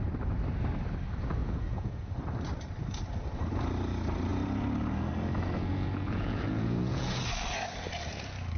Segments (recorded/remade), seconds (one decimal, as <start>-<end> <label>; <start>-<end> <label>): 0.0-1.4 recorded; 1.4-2.1 remade; 2.1-5.7 recorded; 5.7-7.2 remade; 7.2-8.6 recorded